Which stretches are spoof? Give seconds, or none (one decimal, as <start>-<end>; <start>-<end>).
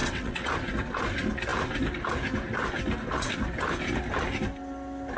0.0-0.5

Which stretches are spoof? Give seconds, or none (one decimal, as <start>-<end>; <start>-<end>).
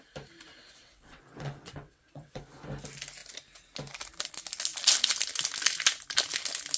0.8-2.4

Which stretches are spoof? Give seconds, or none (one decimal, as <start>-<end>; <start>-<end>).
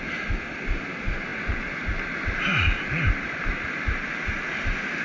none